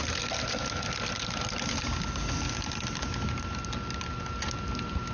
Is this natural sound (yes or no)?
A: yes